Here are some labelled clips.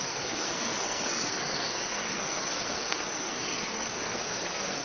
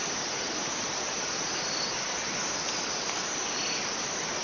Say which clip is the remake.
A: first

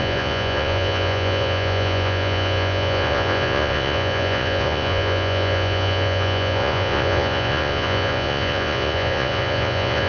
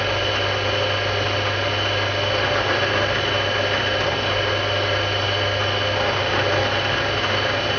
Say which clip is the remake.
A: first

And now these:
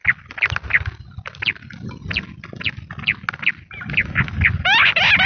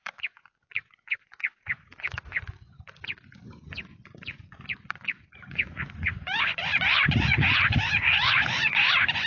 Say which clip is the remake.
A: second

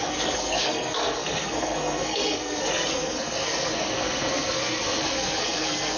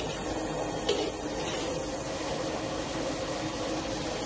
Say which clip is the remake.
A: first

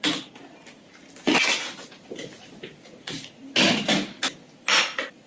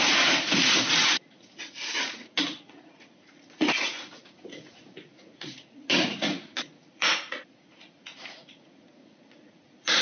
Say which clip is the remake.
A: second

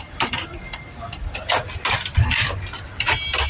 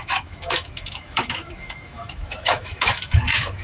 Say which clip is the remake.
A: second